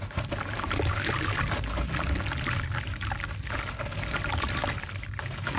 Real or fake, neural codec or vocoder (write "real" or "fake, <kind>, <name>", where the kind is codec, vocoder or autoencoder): real